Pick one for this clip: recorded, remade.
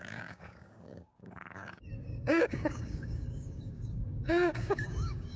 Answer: remade